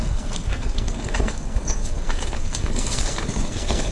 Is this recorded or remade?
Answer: remade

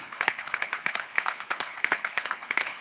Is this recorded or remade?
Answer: remade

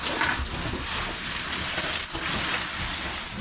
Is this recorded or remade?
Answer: recorded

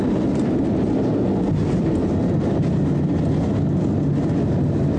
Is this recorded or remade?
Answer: recorded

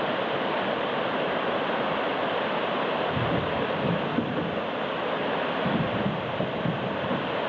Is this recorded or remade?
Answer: remade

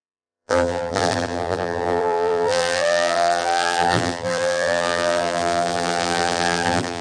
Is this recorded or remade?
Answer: remade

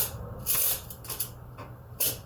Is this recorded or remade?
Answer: remade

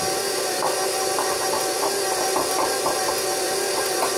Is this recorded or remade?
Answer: recorded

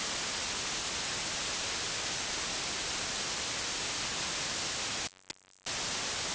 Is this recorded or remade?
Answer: recorded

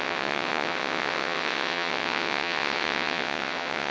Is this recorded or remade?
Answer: remade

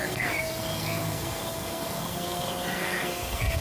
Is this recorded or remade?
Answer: remade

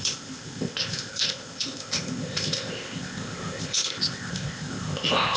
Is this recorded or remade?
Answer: remade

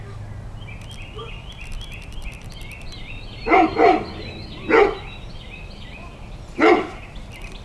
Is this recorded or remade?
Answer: recorded